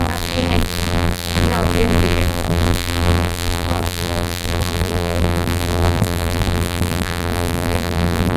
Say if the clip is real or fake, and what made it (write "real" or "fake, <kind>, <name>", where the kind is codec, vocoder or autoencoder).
fake, vocoder, BigVGAN v2